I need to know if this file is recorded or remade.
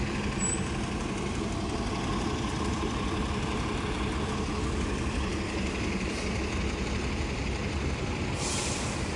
recorded